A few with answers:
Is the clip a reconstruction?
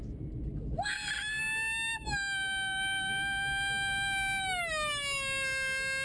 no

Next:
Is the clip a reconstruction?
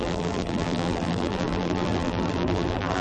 yes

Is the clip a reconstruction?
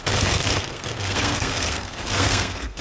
yes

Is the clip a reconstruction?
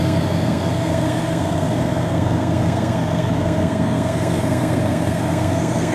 yes